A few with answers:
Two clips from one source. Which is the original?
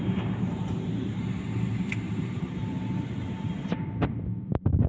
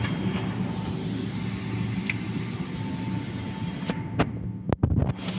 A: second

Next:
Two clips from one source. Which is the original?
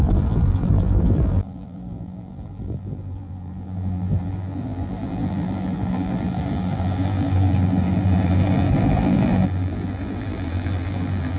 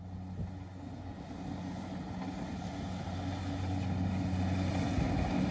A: second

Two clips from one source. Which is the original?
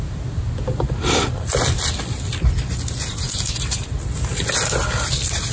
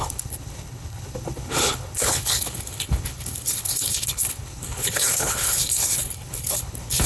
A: first